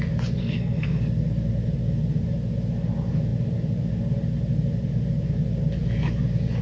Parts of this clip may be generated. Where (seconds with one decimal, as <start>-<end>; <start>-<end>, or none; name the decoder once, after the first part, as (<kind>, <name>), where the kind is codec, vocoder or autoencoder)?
0.4-1.0 (codec, SNAC)